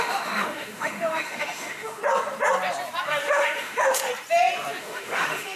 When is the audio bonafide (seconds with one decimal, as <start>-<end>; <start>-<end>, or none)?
2.0-3.2; 4.1-4.8